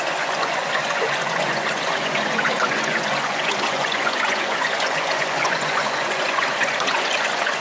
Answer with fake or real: fake